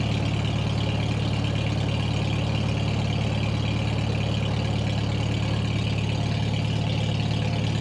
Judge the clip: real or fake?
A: real